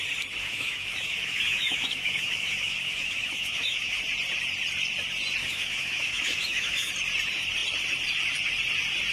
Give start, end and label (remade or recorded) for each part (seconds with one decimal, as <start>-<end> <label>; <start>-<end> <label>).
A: 0.0-0.4 recorded; 0.4-4.0 remade; 4.0-5.4 recorded; 5.4-6.9 remade; 6.9-9.1 recorded